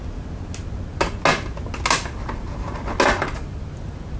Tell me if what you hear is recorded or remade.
recorded